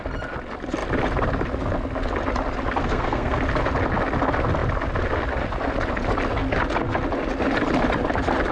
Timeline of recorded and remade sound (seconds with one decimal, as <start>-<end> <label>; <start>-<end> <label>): 0.0-2.8 recorded; 2.8-3.4 remade; 3.4-8.5 recorded